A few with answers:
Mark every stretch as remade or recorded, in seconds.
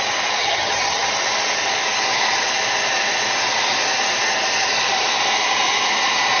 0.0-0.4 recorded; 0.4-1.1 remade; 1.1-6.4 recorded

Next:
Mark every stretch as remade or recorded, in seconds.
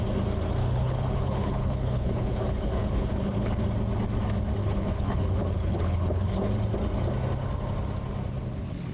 0.0-0.6 recorded; 0.6-3.6 remade; 3.6-4.6 recorded; 4.6-6.5 remade; 6.5-8.9 recorded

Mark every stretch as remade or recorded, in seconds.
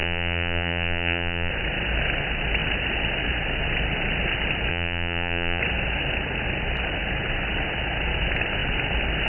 0.0-1.5 remade; 1.5-4.7 recorded; 4.7-5.6 remade; 5.6-9.3 recorded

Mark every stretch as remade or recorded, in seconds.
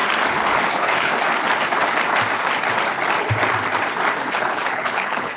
0.0-0.7 recorded; 0.7-1.1 remade; 1.1-4.3 recorded; 4.3-5.4 remade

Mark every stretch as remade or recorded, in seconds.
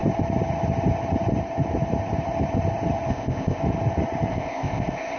0.0-3.1 recorded; 3.1-3.6 remade; 3.6-4.3 recorded; 4.3-5.2 remade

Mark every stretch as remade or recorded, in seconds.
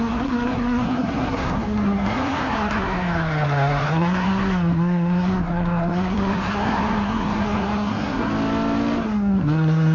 0.0-8.3 remade; 8.3-9.0 recorded; 9.0-9.9 remade